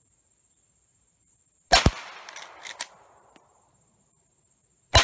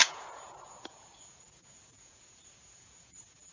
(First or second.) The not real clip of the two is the second